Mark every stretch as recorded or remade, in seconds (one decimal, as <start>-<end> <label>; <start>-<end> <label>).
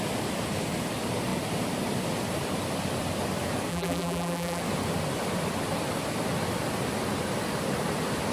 0.0-3.7 recorded; 3.7-4.6 remade; 4.6-8.3 recorded